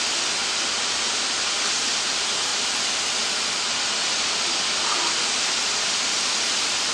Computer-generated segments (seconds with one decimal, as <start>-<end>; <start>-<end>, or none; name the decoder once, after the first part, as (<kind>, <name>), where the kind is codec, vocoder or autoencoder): 2.5-6.9 (vocoder, BigVGAN v2)